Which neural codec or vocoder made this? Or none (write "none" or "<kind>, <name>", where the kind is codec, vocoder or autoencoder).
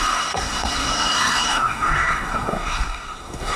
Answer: codec, SNAC